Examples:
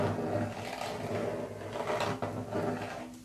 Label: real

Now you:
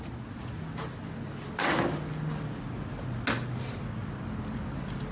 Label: real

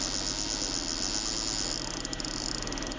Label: real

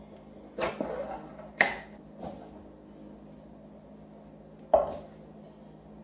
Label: real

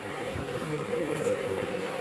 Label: fake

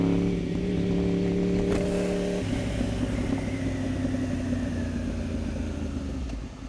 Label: real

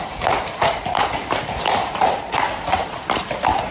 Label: real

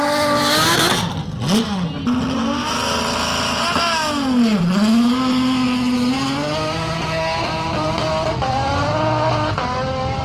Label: real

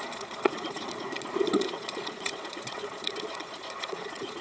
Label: fake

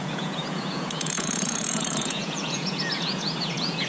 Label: fake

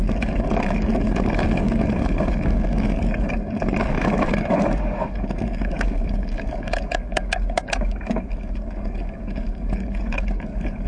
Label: fake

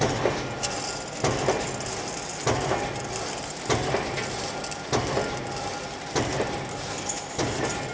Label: real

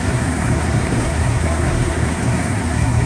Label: fake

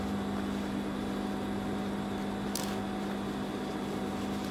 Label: real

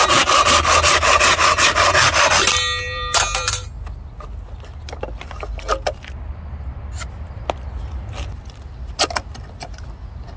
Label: real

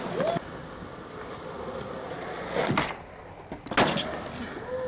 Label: real